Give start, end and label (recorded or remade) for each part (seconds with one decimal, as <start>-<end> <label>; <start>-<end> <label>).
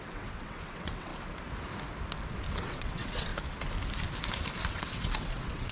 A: 0.0-1.1 remade; 1.1-2.6 recorded; 2.6-3.3 remade; 3.3-4.7 recorded; 4.7-5.7 remade